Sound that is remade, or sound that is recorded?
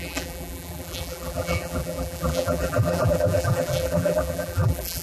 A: remade